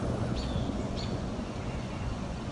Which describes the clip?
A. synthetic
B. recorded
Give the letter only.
A